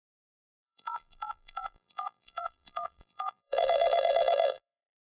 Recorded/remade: remade